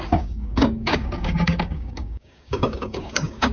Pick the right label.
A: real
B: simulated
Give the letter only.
B